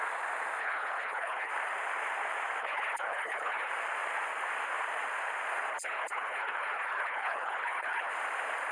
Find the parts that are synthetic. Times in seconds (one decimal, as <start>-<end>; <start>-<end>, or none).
0.6-1.5; 2.6-3.7; 5.7-8.1